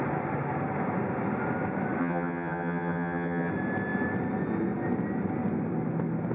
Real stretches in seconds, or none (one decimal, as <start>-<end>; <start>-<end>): 0.0-2.0; 3.5-6.3